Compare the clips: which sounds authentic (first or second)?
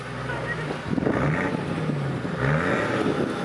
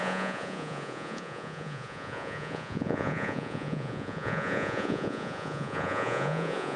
first